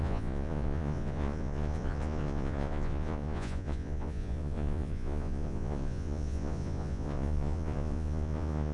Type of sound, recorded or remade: remade